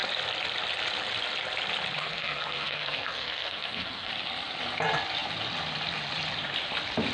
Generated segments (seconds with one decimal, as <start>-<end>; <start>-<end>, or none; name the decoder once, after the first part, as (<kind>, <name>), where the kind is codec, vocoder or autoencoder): 2.0-4.1 (codec, SNAC)